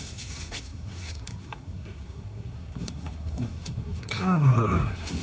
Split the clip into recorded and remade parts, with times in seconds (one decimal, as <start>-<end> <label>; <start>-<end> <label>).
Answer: 0.0-5.2 remade